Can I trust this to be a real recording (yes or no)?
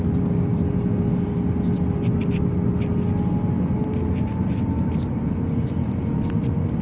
yes